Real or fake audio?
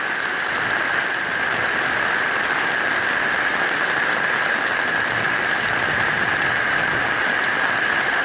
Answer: real